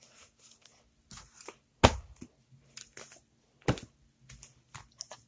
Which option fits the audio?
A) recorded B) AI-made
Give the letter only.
A